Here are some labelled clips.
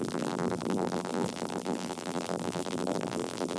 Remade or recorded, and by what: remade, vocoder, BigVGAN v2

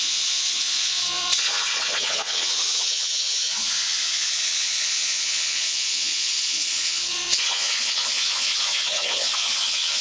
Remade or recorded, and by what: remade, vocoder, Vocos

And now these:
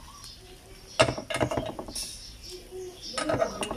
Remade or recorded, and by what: recorded